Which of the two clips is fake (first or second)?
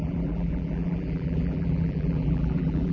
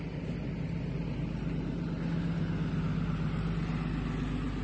first